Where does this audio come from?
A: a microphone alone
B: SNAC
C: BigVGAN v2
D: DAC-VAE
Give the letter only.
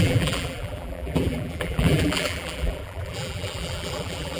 C